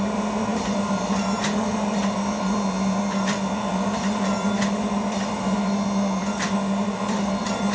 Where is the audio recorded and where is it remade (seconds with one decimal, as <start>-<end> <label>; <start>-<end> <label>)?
0.0-7.7 recorded